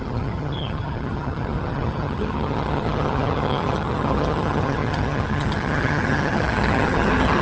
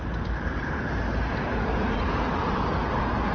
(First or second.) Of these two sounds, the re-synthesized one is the first